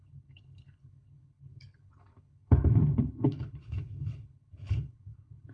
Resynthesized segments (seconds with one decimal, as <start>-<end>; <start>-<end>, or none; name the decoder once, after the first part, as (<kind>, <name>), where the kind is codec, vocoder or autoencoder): 0.0-5.5 (codec, HILCodec)